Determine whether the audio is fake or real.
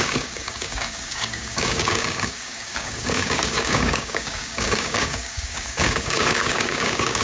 fake